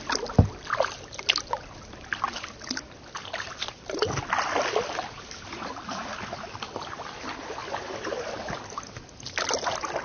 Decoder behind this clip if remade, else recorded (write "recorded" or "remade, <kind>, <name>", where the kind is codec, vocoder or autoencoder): recorded